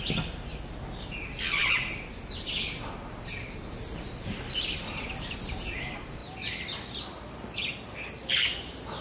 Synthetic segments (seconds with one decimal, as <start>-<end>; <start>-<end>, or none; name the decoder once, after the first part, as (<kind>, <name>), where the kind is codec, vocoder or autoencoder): none